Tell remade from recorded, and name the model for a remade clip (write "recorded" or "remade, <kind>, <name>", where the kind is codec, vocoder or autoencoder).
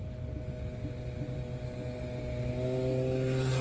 recorded